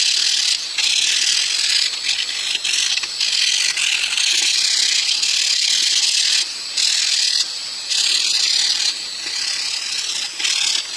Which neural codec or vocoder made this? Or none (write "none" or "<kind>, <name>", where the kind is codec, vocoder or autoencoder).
none